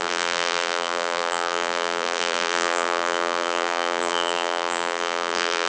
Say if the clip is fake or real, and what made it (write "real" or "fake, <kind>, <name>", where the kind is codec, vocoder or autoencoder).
fake, vocoder, BigVGAN v2